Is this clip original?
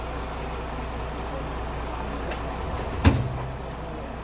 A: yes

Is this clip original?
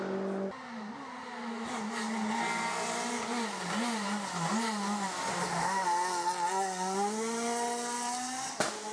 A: yes